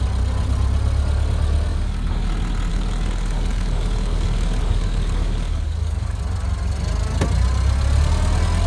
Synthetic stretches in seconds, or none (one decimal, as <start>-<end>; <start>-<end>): 1.7-2.3; 2.7-6.2